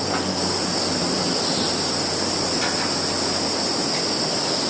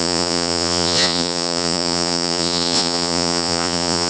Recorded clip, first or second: first